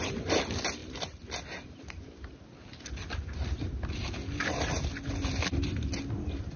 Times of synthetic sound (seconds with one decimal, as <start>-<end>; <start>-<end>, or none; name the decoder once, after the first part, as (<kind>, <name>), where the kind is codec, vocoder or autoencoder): none